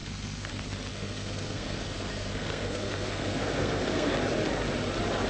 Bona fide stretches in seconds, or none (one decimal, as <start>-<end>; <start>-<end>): 0.5-0.9; 4.1-5.3